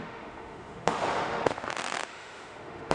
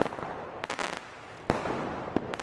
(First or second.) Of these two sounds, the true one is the second